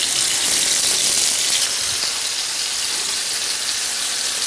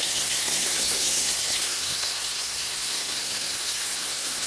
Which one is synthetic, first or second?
second